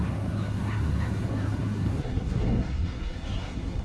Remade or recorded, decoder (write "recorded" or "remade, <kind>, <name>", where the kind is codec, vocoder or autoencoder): remade, codec, SNAC